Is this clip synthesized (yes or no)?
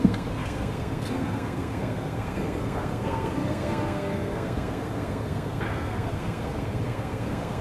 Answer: yes